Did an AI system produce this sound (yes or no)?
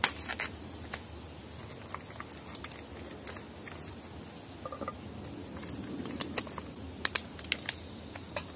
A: no